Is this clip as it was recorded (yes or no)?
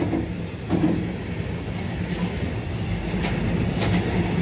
yes